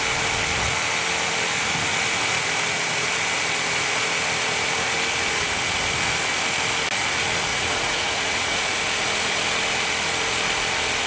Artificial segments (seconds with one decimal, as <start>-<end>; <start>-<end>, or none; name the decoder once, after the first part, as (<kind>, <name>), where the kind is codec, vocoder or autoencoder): 7.5-8.8 (vocoder, Vocos)